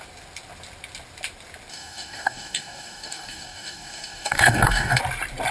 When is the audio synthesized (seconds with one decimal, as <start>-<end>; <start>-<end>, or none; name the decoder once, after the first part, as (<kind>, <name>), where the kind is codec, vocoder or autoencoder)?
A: 1.7-5.0 (codec, DAC)